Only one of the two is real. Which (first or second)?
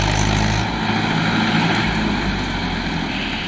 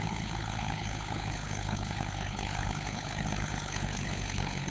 first